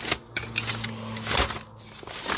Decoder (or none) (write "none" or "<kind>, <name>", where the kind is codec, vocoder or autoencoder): none